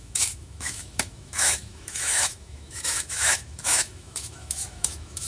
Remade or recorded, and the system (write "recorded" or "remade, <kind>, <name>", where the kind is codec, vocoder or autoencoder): remade, autoencoder, DAC-VAE